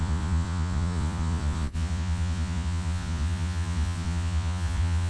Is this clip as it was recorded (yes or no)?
no